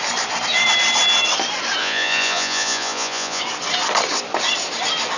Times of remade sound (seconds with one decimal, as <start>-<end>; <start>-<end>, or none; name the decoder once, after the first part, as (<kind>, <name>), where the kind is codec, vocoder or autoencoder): 1.8-3.4 (vocoder, Vocos)